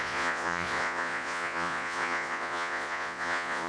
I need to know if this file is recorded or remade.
remade